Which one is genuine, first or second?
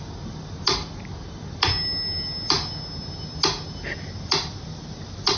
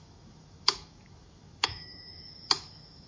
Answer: first